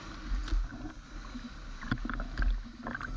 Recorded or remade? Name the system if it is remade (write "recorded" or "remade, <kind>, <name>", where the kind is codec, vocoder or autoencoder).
recorded